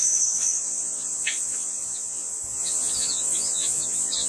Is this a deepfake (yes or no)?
yes